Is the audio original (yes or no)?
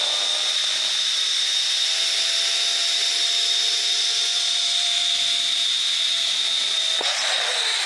yes